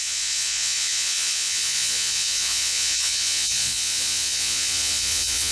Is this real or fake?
fake